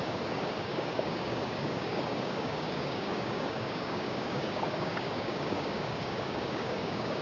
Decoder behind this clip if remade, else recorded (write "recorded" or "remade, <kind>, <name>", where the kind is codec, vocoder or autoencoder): remade, codec, DAC